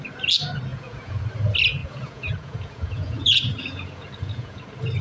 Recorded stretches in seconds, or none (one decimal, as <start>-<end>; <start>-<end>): 0.0-0.7; 1.2-1.8; 4.6-5.0